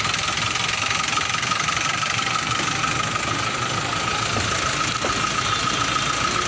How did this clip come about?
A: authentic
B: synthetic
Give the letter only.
A